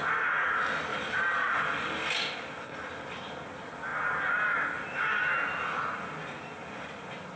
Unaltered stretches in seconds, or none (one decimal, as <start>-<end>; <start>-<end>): 0.0-0.9; 1.5-7.4